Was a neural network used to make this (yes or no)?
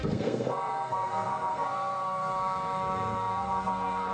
yes